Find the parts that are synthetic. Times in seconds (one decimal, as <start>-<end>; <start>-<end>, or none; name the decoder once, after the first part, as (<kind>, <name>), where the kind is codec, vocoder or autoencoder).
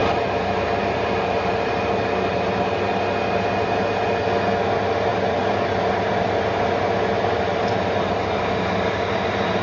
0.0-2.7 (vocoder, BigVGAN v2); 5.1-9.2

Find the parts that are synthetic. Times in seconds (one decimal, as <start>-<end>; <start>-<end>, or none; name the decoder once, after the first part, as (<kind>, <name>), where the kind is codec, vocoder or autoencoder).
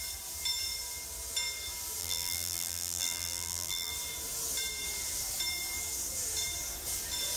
2.0-3.9 (vocoder, BigVGAN v2)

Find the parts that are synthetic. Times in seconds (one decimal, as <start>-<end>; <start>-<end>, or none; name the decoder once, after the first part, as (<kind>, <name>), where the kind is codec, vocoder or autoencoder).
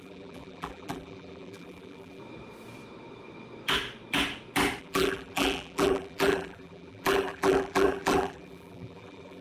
0.0-2.2 (vocoder, BigVGAN v2); 4.8-9.4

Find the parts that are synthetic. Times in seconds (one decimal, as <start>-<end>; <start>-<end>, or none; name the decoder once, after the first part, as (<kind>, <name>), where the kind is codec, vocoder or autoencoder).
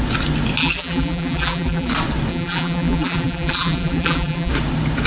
0.6-1.9 (vocoder, BigVGAN v2); 2.3-4.5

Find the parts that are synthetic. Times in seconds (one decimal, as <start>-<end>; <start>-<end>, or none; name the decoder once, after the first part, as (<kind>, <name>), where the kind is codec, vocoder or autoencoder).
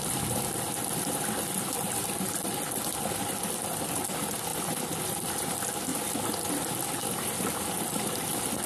0.0-5.9 (vocoder, BigVGAN v2); 7.0-8.7